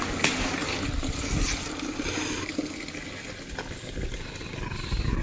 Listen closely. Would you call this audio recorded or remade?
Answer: recorded